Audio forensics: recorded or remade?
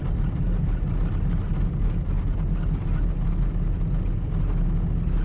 recorded